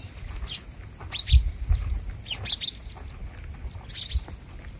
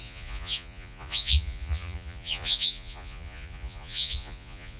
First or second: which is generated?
second